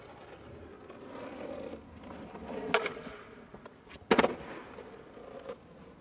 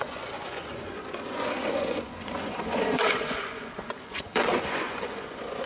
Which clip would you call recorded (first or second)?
first